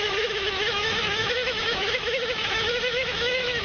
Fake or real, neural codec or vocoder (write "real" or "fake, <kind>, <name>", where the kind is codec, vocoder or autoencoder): fake, autoencoder, DAC-VAE